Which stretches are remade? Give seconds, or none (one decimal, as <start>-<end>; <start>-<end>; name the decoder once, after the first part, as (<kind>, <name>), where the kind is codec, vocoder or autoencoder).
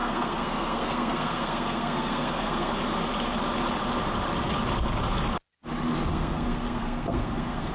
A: 0.0-2.7 (codec, SNAC); 6.1-7.7